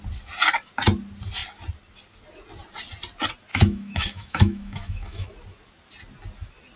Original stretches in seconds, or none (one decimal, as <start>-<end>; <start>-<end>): 0.0-3.5; 5.3-6.8

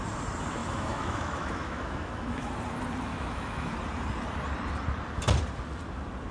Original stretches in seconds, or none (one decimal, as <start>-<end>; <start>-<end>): 0.0-0.6; 2.5-3.1; 3.7-6.3

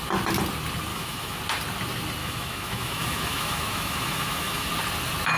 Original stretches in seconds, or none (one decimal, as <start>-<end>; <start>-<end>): 0.0-0.9; 1.4-2.2; 4.7-5.4

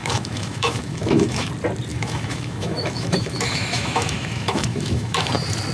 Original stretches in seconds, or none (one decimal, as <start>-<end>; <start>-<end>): 1.5-1.9; 5.3-5.7

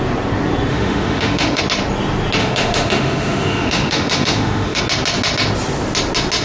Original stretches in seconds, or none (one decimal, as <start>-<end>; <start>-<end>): 0.0-0.7; 1.6-2.4; 4.8-6.4

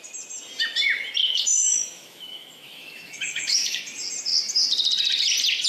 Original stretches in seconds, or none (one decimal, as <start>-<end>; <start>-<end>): 0.0-1.2; 3.8-5.7